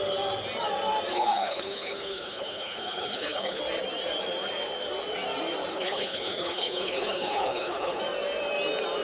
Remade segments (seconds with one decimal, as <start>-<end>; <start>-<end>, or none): 1.1-3.6; 5.7-8.0